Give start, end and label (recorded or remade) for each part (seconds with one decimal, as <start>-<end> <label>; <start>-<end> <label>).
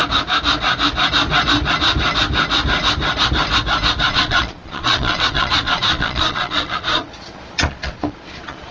0.0-4.1 recorded; 4.1-8.7 remade